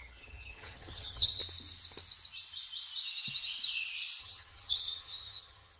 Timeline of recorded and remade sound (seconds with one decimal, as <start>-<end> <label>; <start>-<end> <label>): 0.0-1.4 remade; 1.4-4.2 recorded; 4.2-5.8 remade

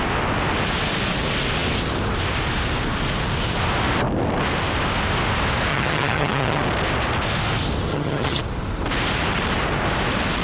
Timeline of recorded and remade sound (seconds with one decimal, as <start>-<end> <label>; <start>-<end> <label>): 0.0-5.7 recorded; 5.7-6.6 remade; 6.6-7.9 recorded; 7.9-8.4 remade; 8.4-10.4 recorded